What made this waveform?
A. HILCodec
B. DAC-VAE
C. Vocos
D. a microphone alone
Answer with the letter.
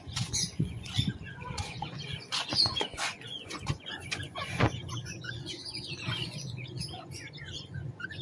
C